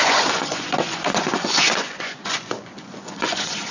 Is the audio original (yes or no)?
no